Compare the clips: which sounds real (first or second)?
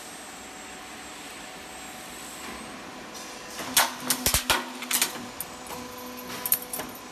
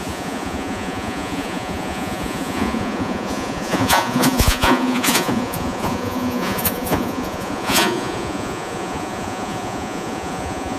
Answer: first